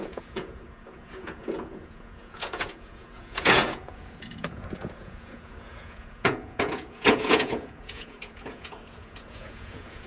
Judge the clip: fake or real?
fake